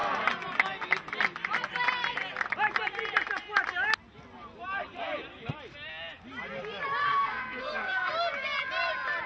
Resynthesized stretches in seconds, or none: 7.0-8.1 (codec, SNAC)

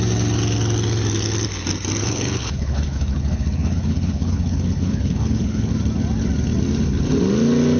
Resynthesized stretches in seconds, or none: 2.0-5.7 (codec, HILCodec)

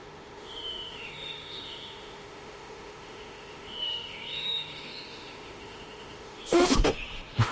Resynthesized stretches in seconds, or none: 0.0-7.5 (autoencoder, DAC-VAE)

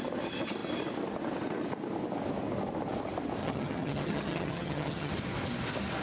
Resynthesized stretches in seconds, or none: 3.4-5.1 (vocoder, HiFi-GAN)

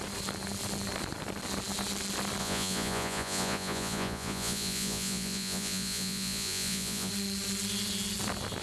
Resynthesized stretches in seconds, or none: 2.4-7.1 (vocoder, Vocos)

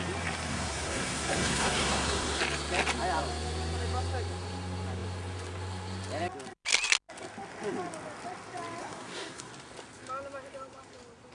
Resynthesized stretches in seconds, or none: 0.5-2.4 (codec, SNAC); 8.8-9.5

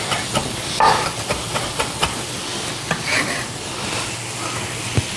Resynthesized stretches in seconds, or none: none

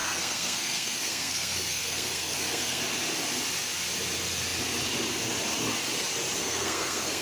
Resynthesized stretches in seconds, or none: 0.0-2.8 (codec, SNAC); 6.4-7.2